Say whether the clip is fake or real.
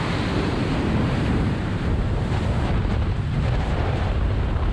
fake